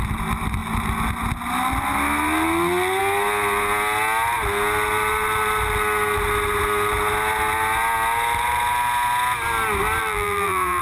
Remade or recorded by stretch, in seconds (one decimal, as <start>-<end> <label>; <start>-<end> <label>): 0.0-10.0 recorded; 10.0-10.8 remade